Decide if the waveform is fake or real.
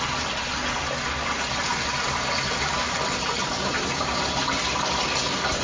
real